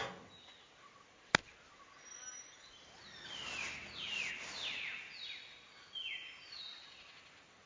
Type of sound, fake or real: real